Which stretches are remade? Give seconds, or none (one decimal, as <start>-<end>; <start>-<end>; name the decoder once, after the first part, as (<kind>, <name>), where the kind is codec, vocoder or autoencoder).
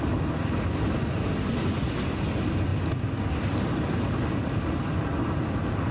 none